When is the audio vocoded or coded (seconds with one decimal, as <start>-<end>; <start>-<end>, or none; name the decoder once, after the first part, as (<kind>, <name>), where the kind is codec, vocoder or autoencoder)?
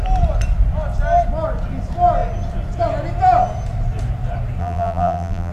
4.6-5.5 (vocoder, BigVGAN v2)